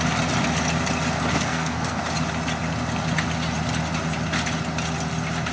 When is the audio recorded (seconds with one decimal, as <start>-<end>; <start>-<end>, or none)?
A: 0.0-1.3; 2.0-5.5